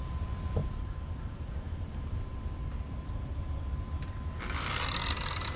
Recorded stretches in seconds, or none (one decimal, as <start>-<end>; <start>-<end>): 0.0-0.6; 3.1-5.6